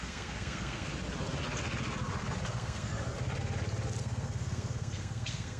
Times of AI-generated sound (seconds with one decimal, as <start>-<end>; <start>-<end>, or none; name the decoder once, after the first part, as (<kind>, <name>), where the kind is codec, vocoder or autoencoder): 0.0-0.9 (codec, SNAC); 2.5-2.9; 4.0-5.6